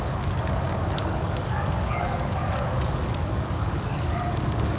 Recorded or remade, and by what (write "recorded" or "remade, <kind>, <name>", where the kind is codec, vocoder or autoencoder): remade, codec, DAC